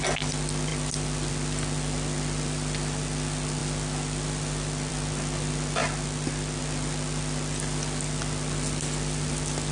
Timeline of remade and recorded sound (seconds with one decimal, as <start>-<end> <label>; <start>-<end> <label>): 0.0-9.7 recorded